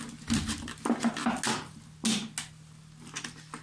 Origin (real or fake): real